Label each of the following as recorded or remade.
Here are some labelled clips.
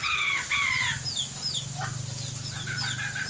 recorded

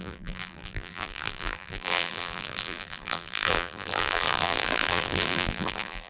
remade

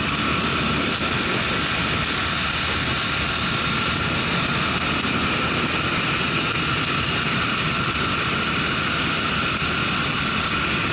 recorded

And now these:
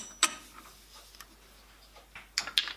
recorded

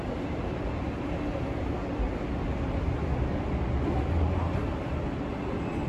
recorded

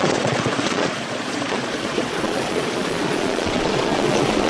remade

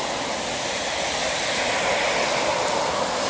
recorded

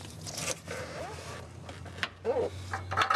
recorded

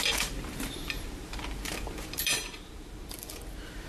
remade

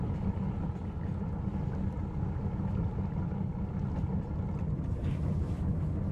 recorded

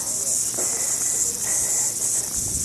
recorded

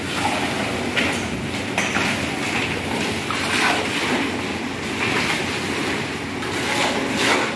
recorded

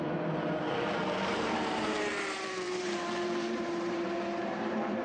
remade